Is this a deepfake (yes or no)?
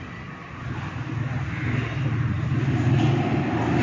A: no